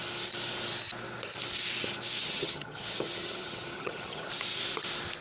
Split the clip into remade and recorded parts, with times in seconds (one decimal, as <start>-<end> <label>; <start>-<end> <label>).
0.0-2.2 recorded; 2.2-4.3 remade; 4.3-5.2 recorded